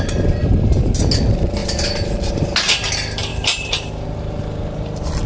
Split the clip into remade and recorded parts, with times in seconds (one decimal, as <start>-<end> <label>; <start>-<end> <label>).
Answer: 0.0-0.4 recorded; 0.4-1.0 remade; 1.0-1.6 recorded; 1.6-2.3 remade; 2.3-3.3 recorded; 3.3-3.9 remade; 3.9-5.3 recorded